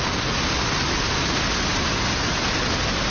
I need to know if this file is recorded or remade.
recorded